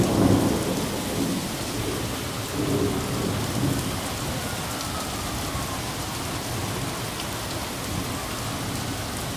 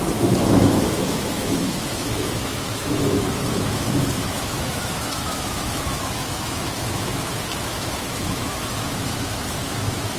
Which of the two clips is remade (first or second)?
second